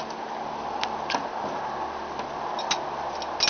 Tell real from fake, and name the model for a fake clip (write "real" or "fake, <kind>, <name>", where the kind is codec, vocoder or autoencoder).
real